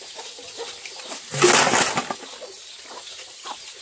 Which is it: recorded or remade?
recorded